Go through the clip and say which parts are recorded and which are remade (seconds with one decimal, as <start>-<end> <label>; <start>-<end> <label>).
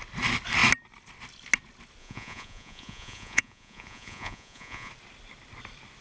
0.0-2.0 recorded; 2.0-4.9 remade; 4.9-6.0 recorded